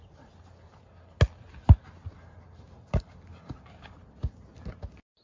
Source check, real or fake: real